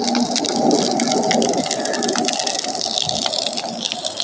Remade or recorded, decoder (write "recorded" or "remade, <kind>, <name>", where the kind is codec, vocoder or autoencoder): recorded